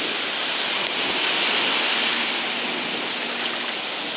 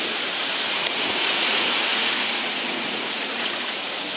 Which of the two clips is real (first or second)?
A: first